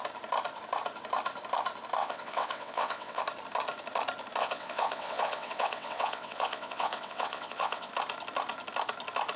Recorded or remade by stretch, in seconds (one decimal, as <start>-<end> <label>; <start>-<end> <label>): 0.0-2.0 recorded; 2.0-3.2 remade; 3.2-4.4 recorded; 4.4-7.9 remade; 7.9-9.4 recorded